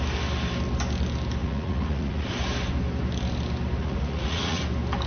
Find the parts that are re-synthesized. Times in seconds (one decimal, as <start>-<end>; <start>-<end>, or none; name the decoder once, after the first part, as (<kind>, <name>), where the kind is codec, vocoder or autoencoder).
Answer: 1.4-2.3 (vocoder, Vocos); 3.8-4.6